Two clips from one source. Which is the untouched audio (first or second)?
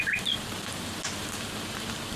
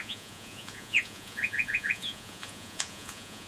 first